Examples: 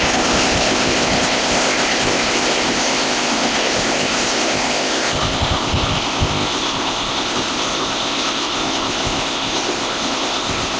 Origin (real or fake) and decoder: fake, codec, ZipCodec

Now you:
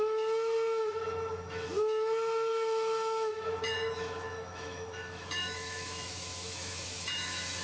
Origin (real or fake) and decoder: fake, autoencoder, DAC-VAE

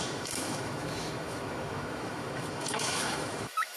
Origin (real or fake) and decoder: fake, autoencoder, DAC-VAE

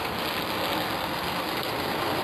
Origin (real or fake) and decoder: real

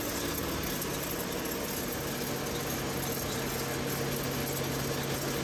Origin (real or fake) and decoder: real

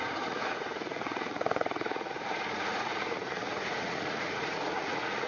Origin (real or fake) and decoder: fake, vocoder, Vocos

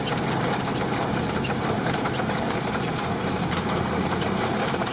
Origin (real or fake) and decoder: fake, vocoder, BigVGAN v2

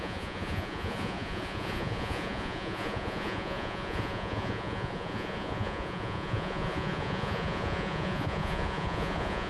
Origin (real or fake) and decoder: fake, vocoder, Vocos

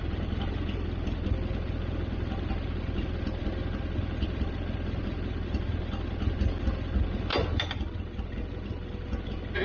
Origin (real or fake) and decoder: real